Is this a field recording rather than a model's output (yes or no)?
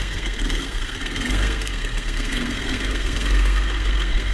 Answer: no